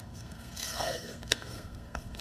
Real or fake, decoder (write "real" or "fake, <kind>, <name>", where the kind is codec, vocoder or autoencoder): fake, codec, SNAC